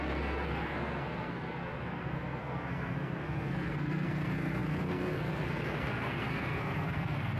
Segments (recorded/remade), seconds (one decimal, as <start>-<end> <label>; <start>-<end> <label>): 0.0-7.4 remade